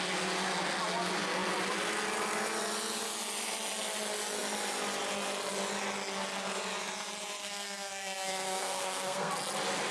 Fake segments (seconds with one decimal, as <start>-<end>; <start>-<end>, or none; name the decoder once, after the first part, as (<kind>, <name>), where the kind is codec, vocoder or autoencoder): 7.4-9.3 (codec, SNAC)